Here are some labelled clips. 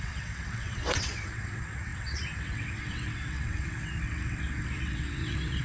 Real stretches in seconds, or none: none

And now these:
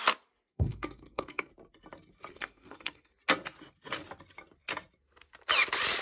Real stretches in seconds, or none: 0.0-0.5; 1.5-2.3; 3.1-6.0